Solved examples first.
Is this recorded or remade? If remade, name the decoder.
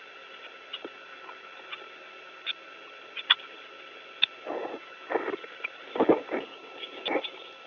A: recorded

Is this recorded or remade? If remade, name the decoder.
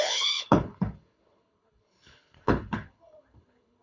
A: remade, codec, HILCodec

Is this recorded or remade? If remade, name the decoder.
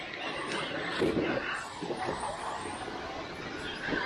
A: recorded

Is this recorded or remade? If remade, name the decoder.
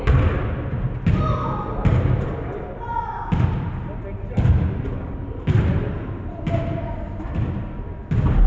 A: recorded